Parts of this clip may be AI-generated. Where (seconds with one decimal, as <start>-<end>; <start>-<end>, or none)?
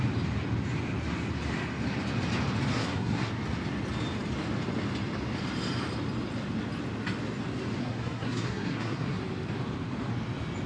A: 2.7-3.3; 7.8-9.2